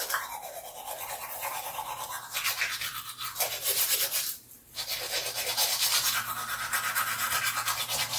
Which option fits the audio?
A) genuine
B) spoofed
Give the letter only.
A